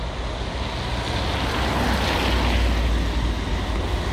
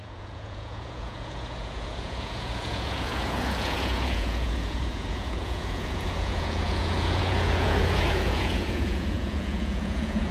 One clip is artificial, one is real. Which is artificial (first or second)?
second